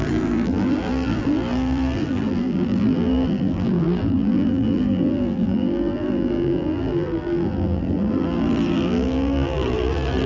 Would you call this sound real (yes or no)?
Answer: no